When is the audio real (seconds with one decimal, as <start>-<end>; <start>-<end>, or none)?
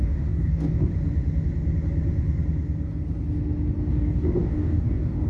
0.9-3.9